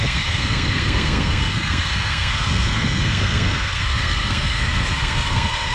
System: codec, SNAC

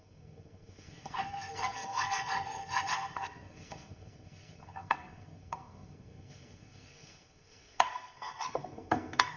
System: codec, SNAC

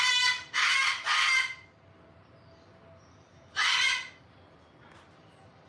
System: none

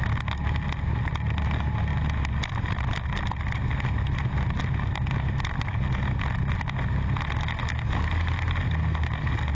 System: none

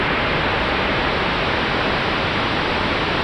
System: none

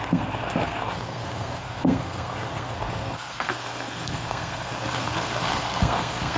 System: codec, SNAC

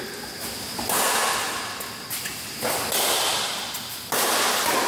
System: none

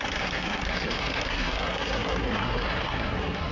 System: codec, SNAC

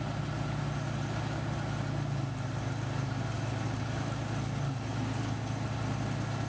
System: none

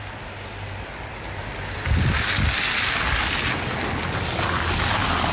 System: none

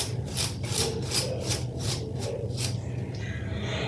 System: none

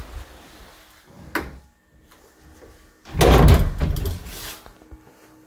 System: none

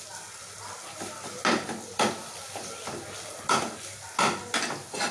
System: none